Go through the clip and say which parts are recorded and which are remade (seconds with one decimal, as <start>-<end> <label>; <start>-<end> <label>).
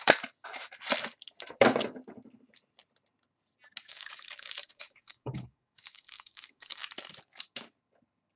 0.0-3.9 recorded; 3.9-6.9 remade; 6.9-8.4 recorded